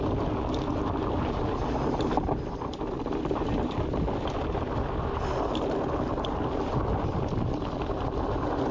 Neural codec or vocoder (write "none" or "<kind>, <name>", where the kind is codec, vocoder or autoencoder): none